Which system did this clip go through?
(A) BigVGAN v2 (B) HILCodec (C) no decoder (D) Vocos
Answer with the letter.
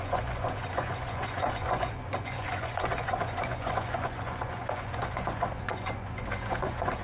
D